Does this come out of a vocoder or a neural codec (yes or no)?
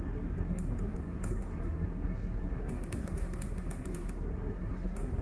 yes